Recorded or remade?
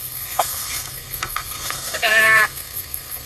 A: remade